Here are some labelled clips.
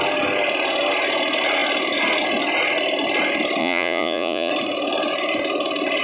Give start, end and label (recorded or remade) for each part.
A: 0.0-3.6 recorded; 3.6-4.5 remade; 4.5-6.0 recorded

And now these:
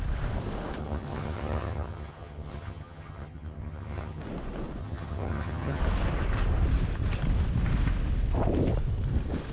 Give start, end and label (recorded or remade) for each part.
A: 0.0-0.8 recorded; 0.8-4.2 remade; 4.2-4.8 recorded; 4.8-5.8 remade; 5.8-9.5 recorded